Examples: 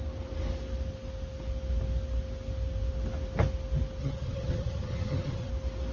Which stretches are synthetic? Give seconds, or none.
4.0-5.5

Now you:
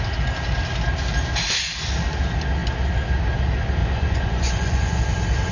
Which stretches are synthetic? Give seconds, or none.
3.8-5.0

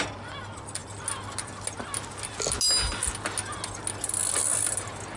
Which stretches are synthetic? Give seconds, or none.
none

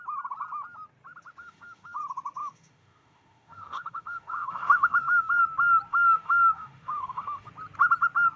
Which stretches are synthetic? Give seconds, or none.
1.4-2.0; 2.4-5.3; 5.9-7.5

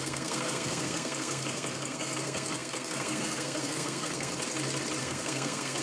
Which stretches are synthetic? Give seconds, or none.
0.0-4.3; 5.0-5.8